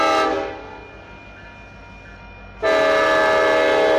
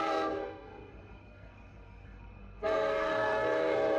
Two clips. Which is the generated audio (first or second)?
second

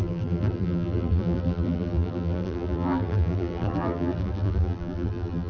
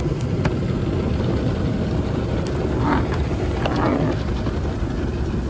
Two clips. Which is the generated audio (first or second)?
first